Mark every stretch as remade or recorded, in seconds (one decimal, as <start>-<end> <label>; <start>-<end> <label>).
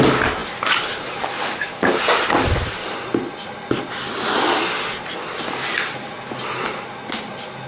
0.0-7.7 recorded